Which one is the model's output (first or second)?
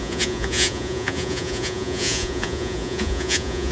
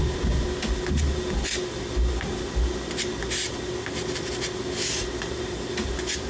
first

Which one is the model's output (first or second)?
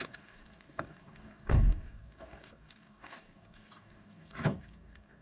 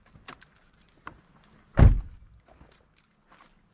first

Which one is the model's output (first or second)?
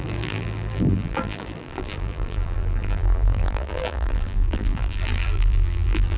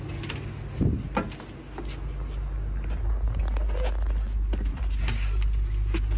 first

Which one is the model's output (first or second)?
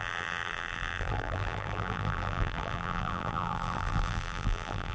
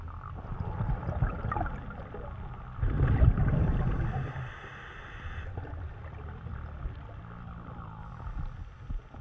first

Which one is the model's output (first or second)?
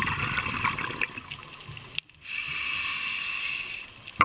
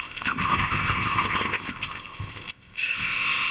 second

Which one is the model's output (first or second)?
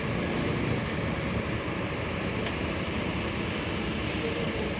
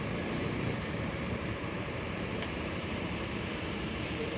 second